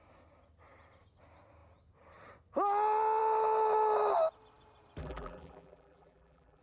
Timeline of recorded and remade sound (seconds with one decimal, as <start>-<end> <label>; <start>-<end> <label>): 0.0-5.0 recorded; 5.0-6.6 remade